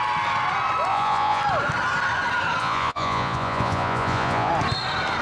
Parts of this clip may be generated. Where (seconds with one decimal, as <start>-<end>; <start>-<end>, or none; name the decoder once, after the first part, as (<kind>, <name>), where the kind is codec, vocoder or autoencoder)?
0.9-1.4 (vocoder, Vocos); 2.6-4.5